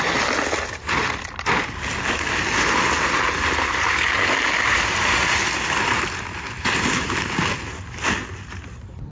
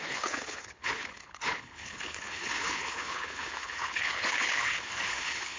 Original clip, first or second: first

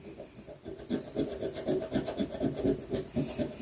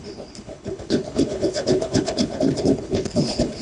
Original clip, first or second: first